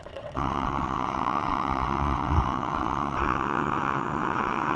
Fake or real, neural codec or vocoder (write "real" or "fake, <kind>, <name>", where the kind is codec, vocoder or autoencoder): fake, vocoder, WaveNeXt